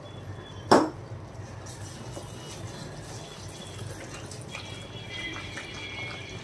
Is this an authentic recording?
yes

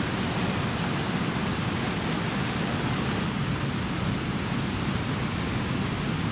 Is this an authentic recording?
yes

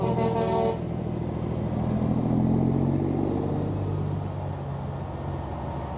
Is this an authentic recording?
yes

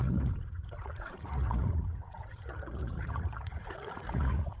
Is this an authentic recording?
no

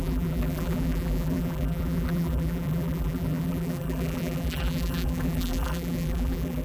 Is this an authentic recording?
no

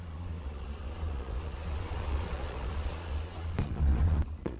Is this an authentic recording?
no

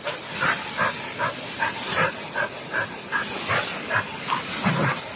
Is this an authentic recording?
yes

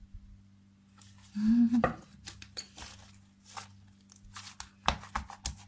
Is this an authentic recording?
yes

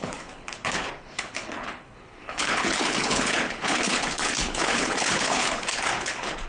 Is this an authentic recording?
no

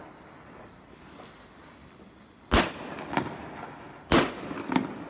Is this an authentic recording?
yes